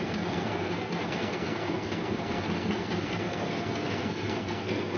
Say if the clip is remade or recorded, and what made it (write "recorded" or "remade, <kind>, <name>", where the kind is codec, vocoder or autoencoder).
remade, codec, SNAC